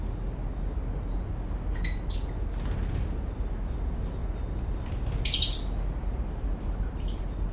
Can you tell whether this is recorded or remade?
recorded